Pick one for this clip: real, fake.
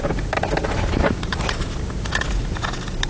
real